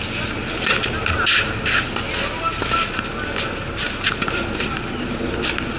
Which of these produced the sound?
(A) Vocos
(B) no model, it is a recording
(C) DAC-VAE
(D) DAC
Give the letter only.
B